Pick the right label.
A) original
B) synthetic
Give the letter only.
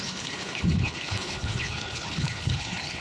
B